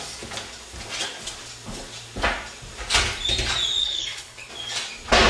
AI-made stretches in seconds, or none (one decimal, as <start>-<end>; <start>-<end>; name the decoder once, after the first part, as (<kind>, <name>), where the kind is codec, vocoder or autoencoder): 3.8-4.5 (codec, HILCodec)